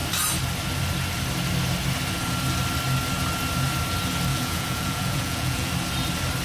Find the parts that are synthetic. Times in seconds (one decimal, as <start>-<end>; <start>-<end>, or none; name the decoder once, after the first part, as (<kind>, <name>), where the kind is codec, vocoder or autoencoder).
4.3-5.7 (vocoder, Vocos)